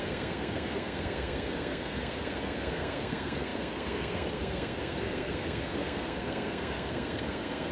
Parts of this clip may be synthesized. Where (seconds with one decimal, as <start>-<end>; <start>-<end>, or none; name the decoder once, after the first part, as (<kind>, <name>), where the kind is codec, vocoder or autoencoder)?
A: 0.0-7.7 (codec, SNAC)